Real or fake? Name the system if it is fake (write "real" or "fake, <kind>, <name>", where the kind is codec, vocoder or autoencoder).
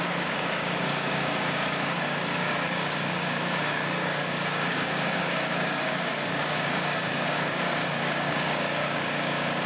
fake, codec, DAC